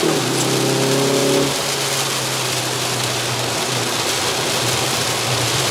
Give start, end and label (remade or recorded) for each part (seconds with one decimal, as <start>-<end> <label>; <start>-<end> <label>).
0.0-5.7 recorded

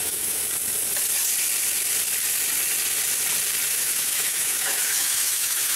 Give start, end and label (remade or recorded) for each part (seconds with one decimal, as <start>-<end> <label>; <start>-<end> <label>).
0.0-0.4 remade; 0.4-3.7 recorded; 3.7-5.8 remade